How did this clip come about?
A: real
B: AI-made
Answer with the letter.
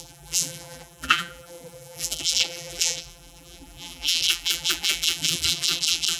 B